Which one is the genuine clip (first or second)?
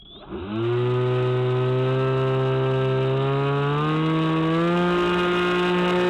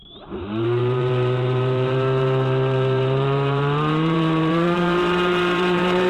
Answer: first